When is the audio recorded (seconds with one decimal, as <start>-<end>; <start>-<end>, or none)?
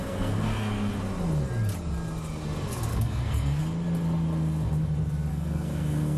0.9-2.9; 3.6-5.3